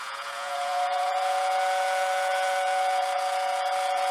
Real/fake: fake